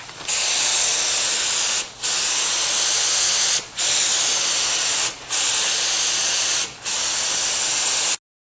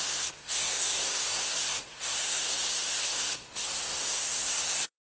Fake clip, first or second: second